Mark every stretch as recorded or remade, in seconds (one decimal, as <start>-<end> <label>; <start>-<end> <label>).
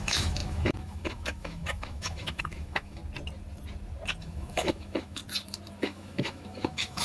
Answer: 0.0-3.0 remade; 3.0-4.2 recorded; 4.2-5.2 remade; 5.2-5.8 recorded; 5.8-7.0 remade